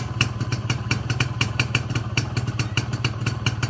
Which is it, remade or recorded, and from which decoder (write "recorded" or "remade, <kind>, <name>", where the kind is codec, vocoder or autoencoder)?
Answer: remade, vocoder, BigVGAN v2